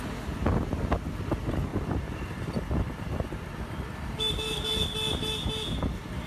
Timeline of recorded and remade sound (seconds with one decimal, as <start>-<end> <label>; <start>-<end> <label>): 0.0-1.7 recorded; 1.7-4.4 remade; 4.4-6.3 recorded